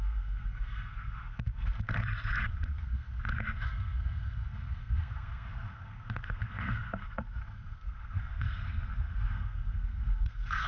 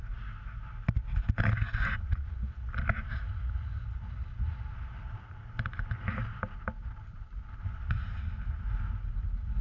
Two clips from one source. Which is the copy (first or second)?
first